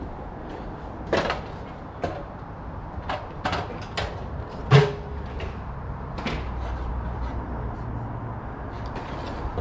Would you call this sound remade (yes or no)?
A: no